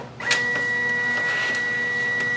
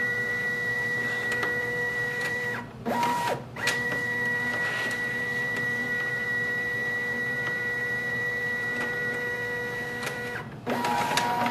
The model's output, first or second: second